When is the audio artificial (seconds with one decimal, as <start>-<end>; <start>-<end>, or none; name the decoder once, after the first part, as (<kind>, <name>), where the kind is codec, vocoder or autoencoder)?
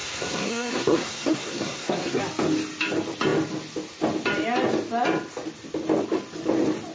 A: 0.0-2.2 (codec, SNAC)